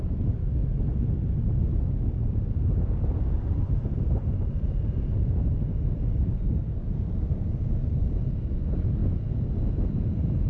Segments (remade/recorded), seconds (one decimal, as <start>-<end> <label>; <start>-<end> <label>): 0.0-0.6 remade; 0.6-2.3 recorded; 2.3-9.0 remade; 9.0-9.7 recorded; 9.7-10.5 remade